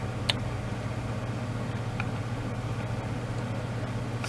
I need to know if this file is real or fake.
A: real